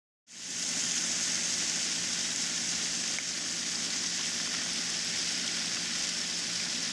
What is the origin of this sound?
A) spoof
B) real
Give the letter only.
B